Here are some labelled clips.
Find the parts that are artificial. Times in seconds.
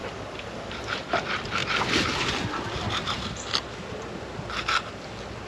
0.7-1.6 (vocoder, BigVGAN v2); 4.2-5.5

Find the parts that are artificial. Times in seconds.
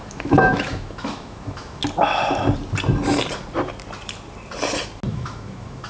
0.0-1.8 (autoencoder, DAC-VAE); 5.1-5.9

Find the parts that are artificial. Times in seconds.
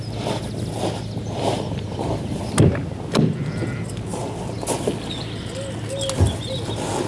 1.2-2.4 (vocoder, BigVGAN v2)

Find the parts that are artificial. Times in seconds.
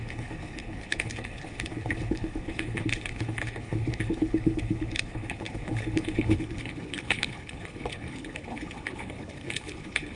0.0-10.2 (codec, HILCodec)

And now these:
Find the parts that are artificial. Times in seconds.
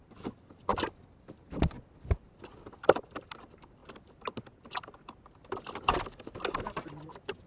none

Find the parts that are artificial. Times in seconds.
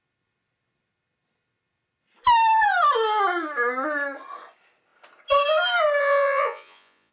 6.0-7.1 (vocoder, Vocos)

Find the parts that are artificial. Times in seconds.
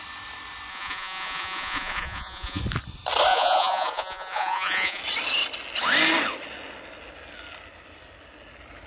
0.7-2.6 (vocoder, Vocos); 3.3-5.0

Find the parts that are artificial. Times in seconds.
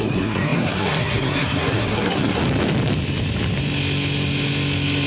0.0-2.4 (codec, SNAC)